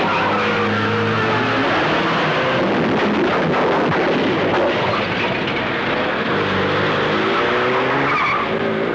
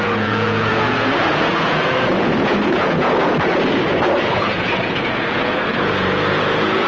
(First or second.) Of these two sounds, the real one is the first